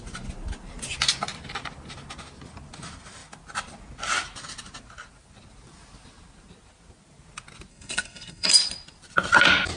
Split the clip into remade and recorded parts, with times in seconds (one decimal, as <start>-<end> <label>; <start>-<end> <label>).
0.0-7.7 recorded; 7.7-8.5 remade; 8.5-9.8 recorded